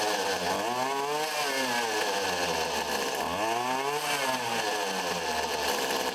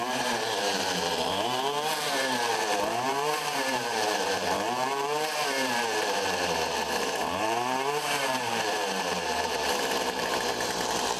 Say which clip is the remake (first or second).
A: second